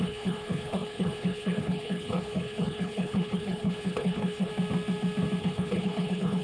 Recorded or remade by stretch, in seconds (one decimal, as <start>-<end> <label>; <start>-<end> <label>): 0.0-4.5 remade; 4.5-5.4 recorded; 5.4-6.4 remade